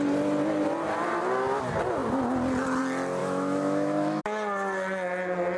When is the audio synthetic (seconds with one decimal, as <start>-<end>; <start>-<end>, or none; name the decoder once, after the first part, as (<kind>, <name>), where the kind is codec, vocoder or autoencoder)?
3.2-4.2 (autoencoder, DAC-VAE)